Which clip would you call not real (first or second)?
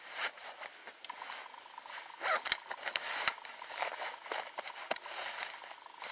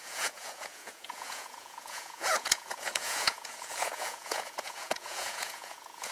second